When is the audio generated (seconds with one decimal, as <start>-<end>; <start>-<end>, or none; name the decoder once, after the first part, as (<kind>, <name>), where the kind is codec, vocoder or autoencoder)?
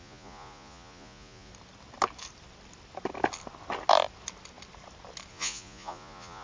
0.0-1.5 (vocoder, Vocos); 5.3-6.4